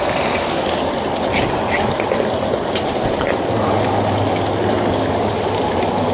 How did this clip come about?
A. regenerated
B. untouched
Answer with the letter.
B